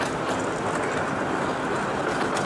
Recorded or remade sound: recorded